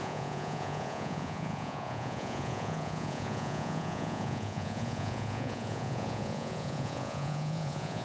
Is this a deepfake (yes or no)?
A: yes